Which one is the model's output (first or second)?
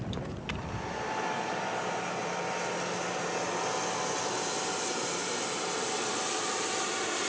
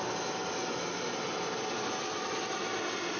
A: first